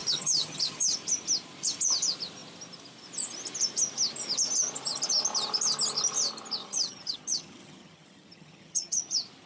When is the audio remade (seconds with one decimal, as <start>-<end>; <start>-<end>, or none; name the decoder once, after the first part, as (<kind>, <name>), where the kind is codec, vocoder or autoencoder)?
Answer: 0.0-0.9 (vocoder, HiFi-GAN); 6.6-9.0